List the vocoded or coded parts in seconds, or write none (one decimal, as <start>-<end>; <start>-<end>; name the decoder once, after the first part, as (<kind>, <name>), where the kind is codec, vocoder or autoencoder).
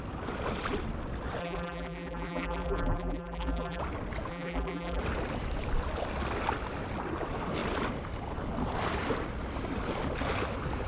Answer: 1.4-3.8 (vocoder, BigVGAN v2); 4.3-5.0